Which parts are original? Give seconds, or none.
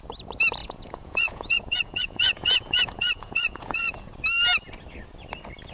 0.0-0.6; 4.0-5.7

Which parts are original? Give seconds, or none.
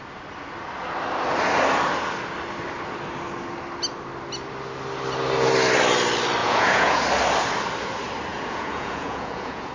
0.0-6.4; 7.0-8.3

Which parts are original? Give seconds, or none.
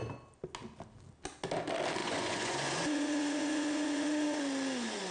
0.0-2.0; 4.4-5.1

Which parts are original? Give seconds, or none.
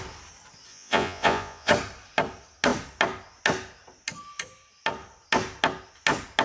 0.0-0.7; 1.7-6.4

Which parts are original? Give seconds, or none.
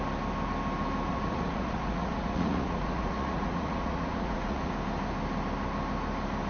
0.0-1.1; 4.7-6.5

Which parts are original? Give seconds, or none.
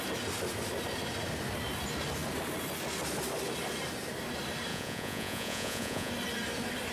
0.0-4.7; 6.1-6.9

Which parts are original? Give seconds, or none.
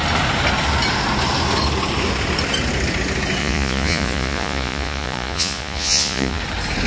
0.0-3.4; 6.4-6.9